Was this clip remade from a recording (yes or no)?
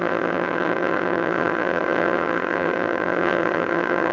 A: yes